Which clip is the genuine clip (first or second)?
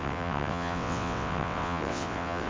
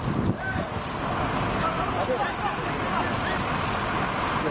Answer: second